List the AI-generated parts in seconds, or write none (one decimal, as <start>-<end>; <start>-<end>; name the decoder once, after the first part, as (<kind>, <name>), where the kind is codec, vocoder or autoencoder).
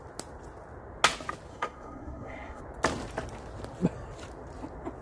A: 1.5-2.6 (codec, SNAC)